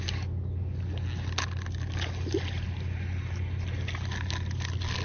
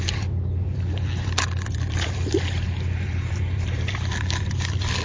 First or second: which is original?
first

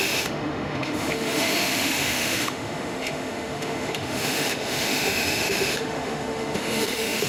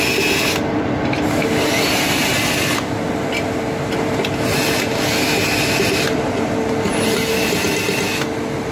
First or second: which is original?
second